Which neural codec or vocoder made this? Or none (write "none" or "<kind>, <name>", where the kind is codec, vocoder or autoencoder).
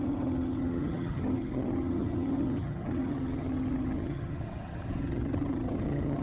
vocoder, HiFi-GAN